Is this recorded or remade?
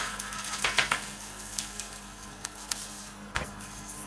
remade